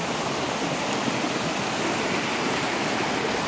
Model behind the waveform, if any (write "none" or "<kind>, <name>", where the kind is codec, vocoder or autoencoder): none